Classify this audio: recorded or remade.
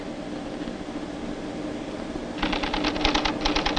recorded